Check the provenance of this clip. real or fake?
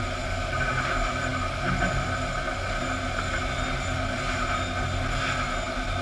real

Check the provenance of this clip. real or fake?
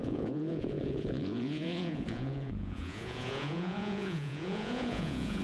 fake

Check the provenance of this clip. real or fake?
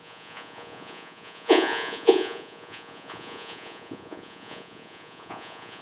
fake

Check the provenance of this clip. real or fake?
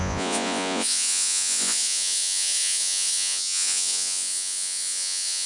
fake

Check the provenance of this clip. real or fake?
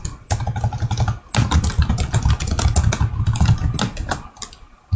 real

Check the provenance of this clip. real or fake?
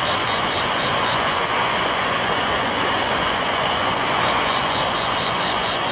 fake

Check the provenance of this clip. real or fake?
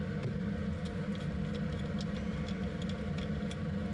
real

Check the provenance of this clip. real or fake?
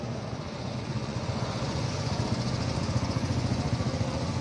fake